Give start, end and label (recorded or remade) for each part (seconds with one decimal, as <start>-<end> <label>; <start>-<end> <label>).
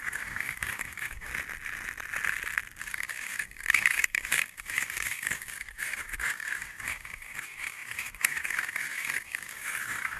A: 0.0-1.3 remade; 1.3-2.8 recorded; 2.8-10.2 remade